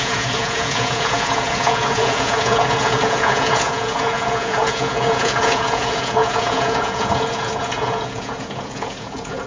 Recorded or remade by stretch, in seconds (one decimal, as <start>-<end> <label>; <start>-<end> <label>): 0.0-9.5 remade